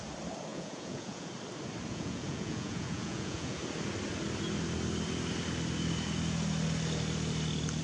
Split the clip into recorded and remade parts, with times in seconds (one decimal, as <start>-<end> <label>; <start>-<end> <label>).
0.0-0.5 recorded; 0.5-1.3 remade; 1.3-1.9 recorded; 1.9-3.6 remade; 3.6-7.8 recorded